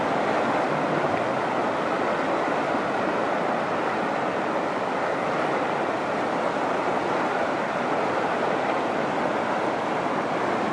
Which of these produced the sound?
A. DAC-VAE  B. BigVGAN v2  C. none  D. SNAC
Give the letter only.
C